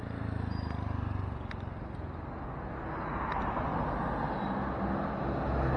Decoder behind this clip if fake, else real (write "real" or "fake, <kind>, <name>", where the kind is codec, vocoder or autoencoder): real